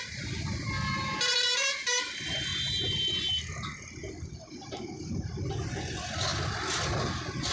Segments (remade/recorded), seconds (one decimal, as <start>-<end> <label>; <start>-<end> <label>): 0.0-7.5 recorded